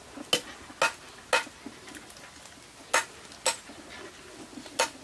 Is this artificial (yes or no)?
no